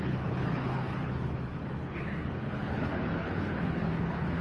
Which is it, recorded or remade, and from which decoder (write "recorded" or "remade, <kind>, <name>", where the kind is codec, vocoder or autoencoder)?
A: remade, codec, HILCodec